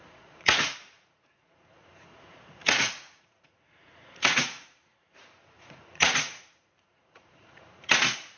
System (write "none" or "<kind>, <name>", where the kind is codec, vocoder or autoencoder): vocoder, Vocos